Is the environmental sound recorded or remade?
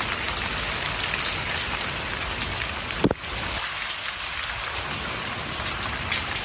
recorded